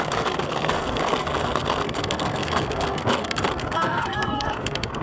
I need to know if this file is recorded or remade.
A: remade